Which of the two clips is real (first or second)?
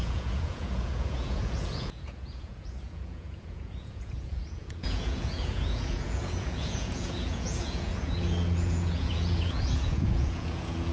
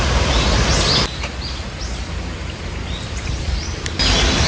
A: second